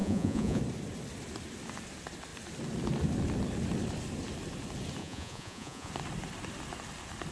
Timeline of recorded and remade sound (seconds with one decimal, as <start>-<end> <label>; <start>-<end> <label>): 0.0-0.6 remade; 0.6-5.0 recorded; 5.0-5.9 remade; 5.9-7.3 recorded